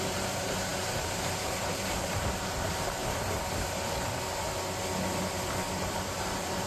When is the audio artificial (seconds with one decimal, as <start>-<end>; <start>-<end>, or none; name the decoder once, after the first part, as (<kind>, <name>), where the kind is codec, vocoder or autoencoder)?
0.0-3.0 (vocoder, BigVGAN v2); 5.8-6.7